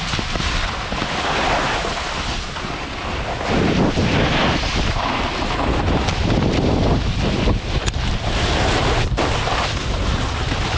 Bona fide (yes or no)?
yes